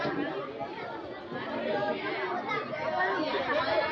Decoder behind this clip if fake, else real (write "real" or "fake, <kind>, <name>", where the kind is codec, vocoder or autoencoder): real